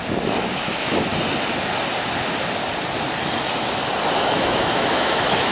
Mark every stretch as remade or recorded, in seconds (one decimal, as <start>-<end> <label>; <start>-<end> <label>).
0.0-0.5 recorded; 0.5-1.1 remade; 1.1-4.2 recorded; 4.2-5.5 remade